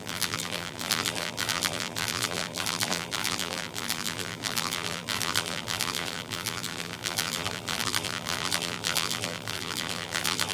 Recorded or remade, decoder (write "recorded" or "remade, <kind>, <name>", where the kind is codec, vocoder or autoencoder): remade, vocoder, BigVGAN v2